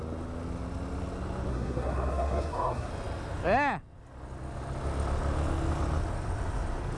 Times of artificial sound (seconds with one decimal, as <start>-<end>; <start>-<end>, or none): 1.5-2.9

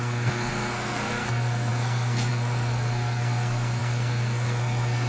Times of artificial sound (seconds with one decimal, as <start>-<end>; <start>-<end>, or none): 0.0-5.1

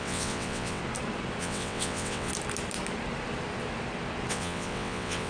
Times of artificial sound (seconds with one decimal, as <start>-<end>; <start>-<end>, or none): 0.0-0.8; 1.4-2.3; 4.3-5.3

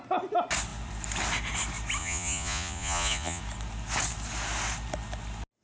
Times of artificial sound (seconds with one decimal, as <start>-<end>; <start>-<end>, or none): 2.0-3.4

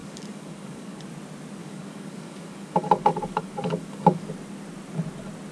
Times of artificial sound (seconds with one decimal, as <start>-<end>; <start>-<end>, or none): 0.0-1.0; 1.6-4.2

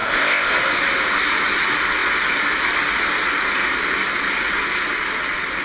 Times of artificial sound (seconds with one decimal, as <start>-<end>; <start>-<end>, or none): 0.0-0.5

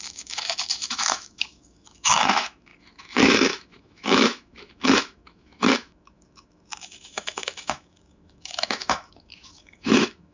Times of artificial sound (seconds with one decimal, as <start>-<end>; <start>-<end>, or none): 0.0-10.3

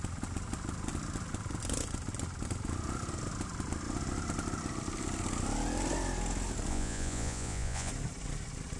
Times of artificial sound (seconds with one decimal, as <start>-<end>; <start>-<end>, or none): 6.7-7.9